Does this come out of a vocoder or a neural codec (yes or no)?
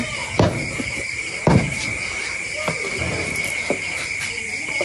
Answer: yes